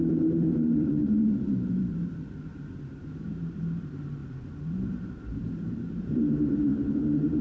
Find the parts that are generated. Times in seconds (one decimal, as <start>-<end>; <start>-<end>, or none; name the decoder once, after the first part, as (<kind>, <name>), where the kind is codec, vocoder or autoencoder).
0.0-7.4 (vocoder, BigVGAN v2)